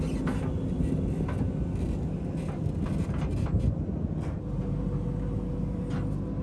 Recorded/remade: recorded